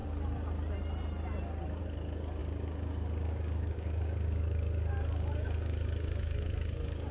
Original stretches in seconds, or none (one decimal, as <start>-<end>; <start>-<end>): 0.0-2.4